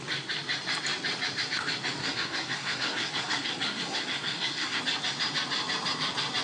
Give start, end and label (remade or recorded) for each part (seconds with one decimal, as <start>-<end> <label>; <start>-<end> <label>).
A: 0.0-2.0 recorded; 2.0-4.8 remade; 4.8-6.4 recorded